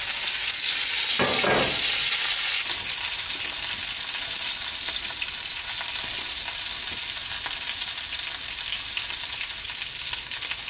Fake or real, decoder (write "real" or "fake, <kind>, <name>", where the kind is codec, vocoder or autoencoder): real